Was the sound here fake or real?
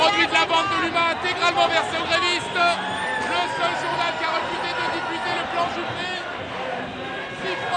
real